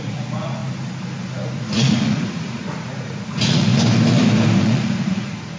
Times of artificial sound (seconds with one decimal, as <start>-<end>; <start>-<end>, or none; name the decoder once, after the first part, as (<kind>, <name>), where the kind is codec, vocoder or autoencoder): 0.0-0.6 (vocoder, Vocos); 1.5-3.7; 4.6-5.6